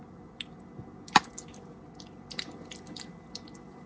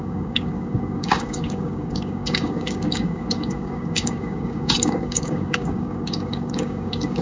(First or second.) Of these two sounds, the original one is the first